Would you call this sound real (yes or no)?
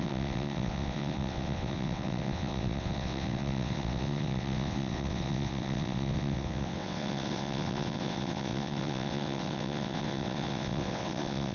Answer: no